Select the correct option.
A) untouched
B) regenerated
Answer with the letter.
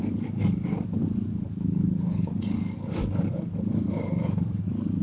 B